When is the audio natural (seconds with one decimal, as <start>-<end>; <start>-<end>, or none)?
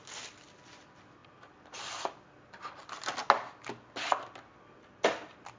0.0-5.6